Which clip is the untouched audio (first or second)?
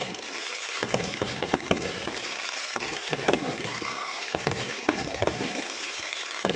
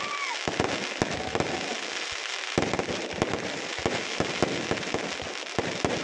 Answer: second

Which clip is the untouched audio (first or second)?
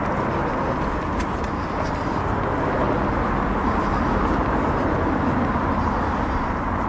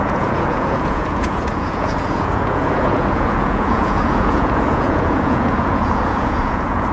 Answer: first